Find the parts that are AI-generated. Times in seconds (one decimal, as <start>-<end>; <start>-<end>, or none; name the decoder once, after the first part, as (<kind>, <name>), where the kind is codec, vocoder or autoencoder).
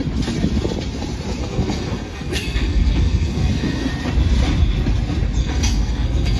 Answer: 1.4-3.9 (codec, SNAC); 5.4-6.4